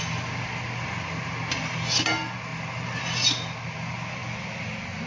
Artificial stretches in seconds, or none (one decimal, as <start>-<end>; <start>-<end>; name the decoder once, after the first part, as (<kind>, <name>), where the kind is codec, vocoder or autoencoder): none